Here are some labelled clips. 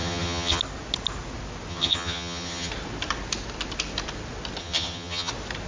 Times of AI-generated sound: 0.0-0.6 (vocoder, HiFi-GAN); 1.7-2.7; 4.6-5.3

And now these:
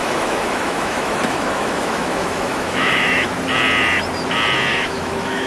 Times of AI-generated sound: 0.0-3.3 (autoencoder, DAC-VAE); 4.7-5.5

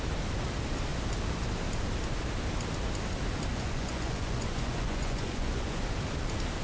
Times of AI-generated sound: 3.5-5.8 (vocoder, Vocos)

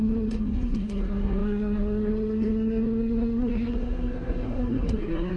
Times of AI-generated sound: 0.0-5.4 (codec, SNAC)